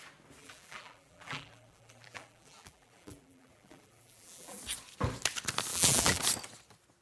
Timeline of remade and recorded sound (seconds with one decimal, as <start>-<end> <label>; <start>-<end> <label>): 0.0-0.4 recorded; 0.4-4.6 remade; 4.6-5.7 recorded; 5.7-6.2 remade; 6.2-7.0 recorded